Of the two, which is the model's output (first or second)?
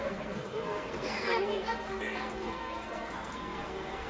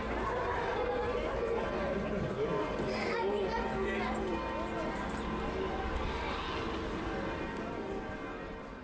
first